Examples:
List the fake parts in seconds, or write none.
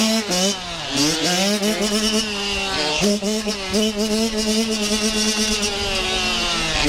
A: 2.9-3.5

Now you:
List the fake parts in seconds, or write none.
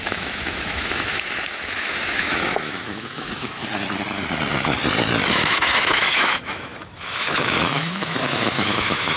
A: 0.0-3.6; 5.3-9.2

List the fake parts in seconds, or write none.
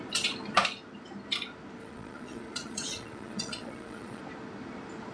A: 1.8-4.2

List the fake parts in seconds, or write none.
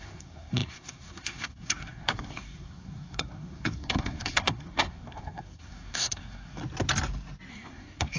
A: 0.0-6.6; 7.5-8.2